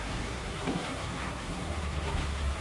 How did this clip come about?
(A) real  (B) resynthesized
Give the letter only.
B